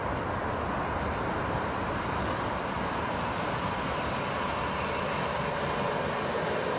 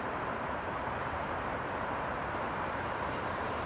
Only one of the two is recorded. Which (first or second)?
first